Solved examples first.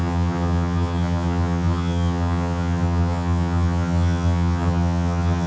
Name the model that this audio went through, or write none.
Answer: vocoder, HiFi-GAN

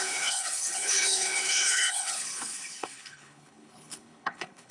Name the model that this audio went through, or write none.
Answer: codec, HILCodec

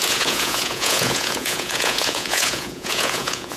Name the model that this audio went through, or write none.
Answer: vocoder, Vocos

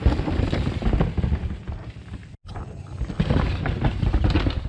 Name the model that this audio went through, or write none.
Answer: none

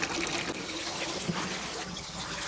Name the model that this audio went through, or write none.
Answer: none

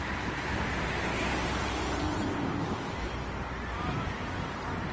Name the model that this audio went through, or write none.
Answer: none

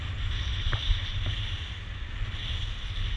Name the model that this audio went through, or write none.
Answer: none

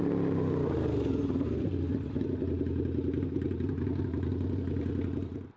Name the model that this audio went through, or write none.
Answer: none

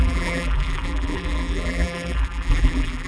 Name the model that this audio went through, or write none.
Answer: vocoder, BigVGAN v2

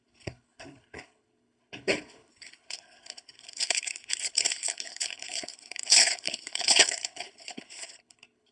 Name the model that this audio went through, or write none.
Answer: codec, HILCodec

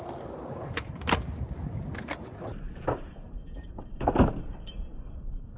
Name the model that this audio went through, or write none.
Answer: none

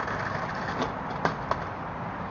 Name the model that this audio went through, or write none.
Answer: none